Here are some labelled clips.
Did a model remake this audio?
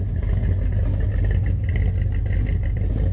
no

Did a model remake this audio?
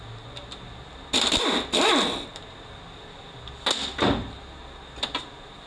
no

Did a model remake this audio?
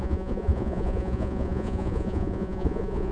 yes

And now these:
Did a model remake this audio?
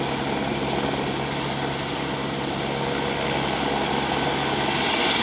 no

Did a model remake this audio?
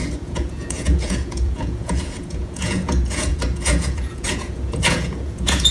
yes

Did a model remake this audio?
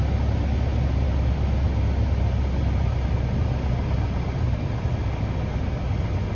no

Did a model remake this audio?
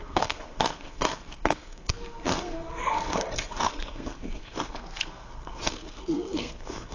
yes